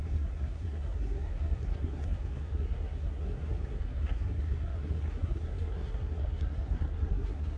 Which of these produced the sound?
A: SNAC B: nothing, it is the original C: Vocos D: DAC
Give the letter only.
A